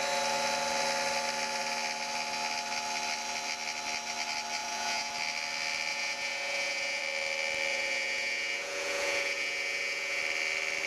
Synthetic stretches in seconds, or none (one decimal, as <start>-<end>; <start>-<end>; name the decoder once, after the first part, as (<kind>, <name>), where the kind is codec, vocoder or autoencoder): 4.6-5.1 (vocoder, Vocos); 5.9-7.0; 7.7-10.2